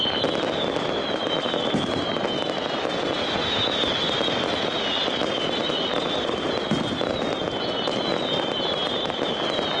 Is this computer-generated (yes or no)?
no